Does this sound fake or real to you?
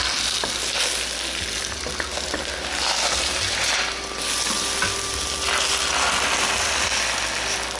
real